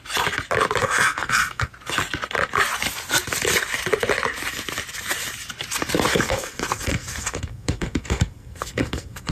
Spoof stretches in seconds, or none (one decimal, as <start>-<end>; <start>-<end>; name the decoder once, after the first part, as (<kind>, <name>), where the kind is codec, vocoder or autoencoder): 0.8-1.7 (codec, SNAC); 6.1-9.3